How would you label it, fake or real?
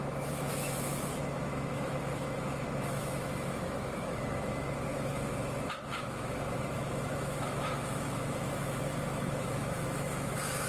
fake